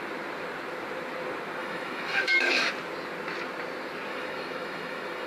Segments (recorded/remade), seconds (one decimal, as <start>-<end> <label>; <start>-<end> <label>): 0.0-1.6 recorded; 1.6-2.7 remade; 2.7-4.1 recorded; 4.1-5.3 remade